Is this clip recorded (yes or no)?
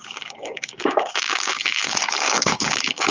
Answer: no